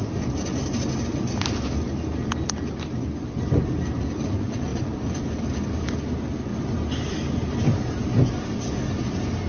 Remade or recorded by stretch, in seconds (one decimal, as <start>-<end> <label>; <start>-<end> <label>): 0.0-9.5 recorded